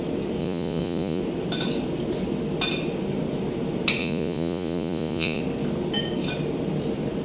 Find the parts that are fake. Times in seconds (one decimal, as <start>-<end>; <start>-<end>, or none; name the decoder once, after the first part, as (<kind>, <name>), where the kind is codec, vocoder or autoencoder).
0.4-1.2 (vocoder, Vocos); 4.0-5.4